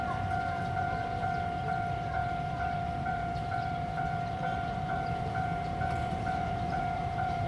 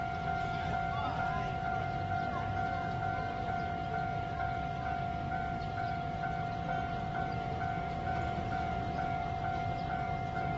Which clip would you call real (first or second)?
second